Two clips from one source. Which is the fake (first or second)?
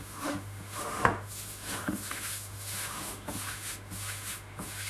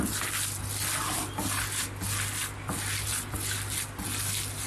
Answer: first